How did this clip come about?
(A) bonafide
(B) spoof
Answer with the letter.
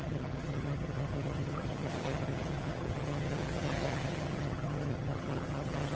B